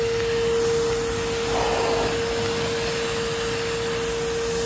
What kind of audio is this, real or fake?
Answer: real